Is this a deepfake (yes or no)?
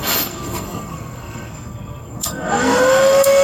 yes